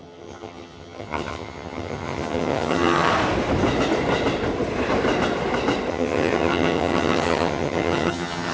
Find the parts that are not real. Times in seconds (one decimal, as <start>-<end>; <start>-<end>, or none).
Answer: 0.0-3.1; 5.9-8.5

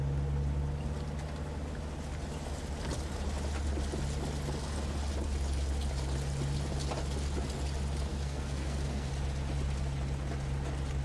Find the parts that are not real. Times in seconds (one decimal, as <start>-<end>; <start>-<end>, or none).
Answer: 8.1-9.1